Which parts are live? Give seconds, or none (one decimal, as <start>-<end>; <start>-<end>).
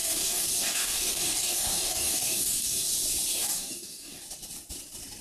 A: 2.9-3.3; 4.2-5.2